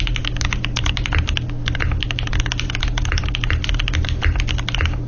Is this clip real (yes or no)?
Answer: yes